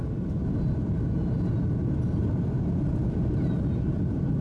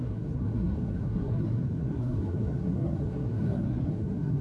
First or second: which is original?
first